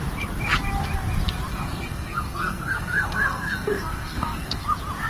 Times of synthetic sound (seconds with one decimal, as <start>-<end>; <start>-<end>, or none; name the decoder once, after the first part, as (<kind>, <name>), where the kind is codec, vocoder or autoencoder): 1.5-4.6 (codec, SNAC)